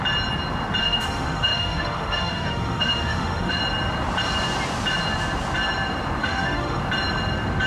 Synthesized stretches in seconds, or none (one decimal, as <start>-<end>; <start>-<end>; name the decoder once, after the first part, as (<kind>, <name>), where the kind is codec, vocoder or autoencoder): 0.8-3.6 (autoencoder, DAC-VAE); 6.2-6.8